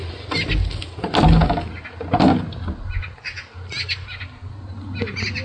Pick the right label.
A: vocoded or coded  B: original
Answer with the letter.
B